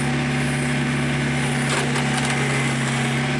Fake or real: real